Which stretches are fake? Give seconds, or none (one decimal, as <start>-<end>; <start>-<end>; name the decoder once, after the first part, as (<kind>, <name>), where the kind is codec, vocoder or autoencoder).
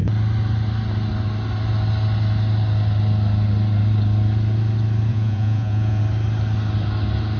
5.1-6.0 (vocoder, Vocos)